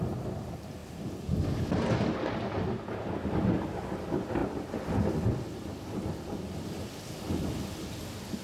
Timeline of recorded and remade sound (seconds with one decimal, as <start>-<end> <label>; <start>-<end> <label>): 0.0-8.4 recorded